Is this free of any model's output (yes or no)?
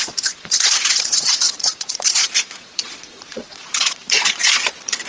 no